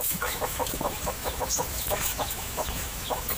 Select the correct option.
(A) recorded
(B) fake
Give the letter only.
B